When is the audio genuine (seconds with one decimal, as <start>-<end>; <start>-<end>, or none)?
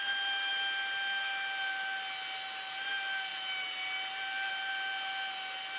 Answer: 0.0-5.8